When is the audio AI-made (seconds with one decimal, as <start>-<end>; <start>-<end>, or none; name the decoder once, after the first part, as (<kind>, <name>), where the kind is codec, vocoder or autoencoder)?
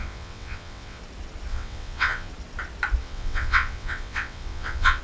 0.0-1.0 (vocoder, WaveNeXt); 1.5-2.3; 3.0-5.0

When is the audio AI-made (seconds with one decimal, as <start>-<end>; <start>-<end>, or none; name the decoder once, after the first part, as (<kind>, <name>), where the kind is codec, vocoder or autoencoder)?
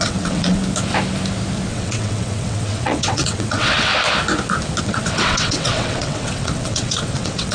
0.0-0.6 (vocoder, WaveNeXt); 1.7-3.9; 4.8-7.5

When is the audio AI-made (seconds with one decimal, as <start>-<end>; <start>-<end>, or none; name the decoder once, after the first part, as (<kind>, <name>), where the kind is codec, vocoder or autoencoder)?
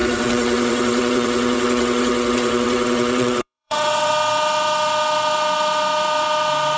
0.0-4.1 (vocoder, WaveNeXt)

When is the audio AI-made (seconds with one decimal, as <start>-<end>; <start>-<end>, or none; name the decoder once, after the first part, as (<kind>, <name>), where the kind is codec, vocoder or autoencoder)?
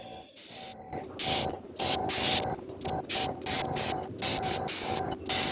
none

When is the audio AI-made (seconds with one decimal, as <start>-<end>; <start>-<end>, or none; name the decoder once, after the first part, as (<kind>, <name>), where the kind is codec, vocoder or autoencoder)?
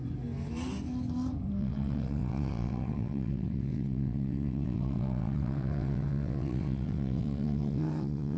1.6-8.4 (vocoder, WaveNeXt)